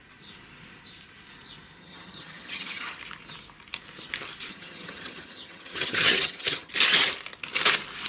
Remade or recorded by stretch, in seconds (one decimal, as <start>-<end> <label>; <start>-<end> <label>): 0.0-1.8 recorded; 1.8-3.0 remade; 3.0-4.5 recorded; 4.5-6.7 remade; 6.7-8.1 recorded